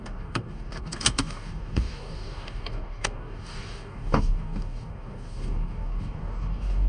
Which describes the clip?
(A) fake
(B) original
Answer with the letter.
A